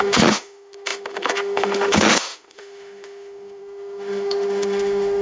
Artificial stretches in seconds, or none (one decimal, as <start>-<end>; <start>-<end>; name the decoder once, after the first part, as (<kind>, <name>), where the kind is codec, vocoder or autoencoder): 0.0-5.2 (autoencoder, DAC-VAE)